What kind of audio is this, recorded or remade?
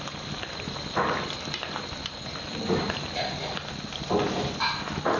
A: recorded